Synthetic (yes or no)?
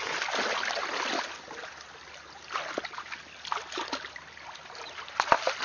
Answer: no